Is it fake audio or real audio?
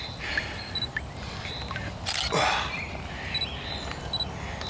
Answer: real